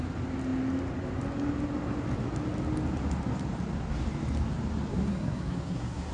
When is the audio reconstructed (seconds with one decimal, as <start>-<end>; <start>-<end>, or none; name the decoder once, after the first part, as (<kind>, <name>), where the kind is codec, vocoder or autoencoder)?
4.9-6.1 (codec, SNAC)